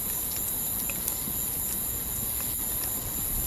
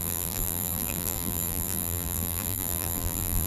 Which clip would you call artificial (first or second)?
second